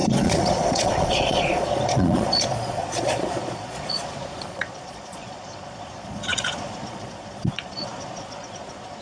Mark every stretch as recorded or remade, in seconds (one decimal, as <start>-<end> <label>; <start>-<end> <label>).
0.0-9.0 remade